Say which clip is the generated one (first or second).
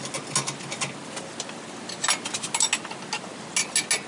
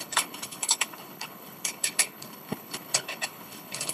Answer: second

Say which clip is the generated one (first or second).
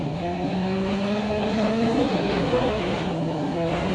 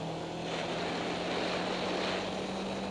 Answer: first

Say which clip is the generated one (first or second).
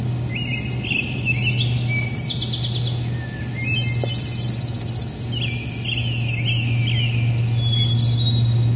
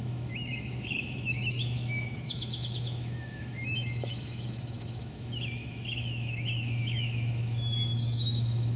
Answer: second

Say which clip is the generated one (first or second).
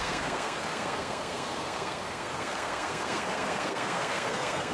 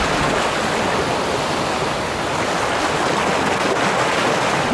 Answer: first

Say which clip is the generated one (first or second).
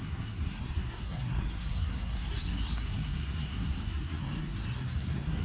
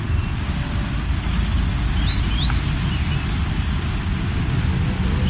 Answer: first